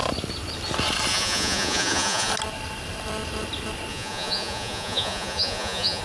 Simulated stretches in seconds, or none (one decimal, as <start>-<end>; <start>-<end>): 1.1-2.3; 3.9-6.0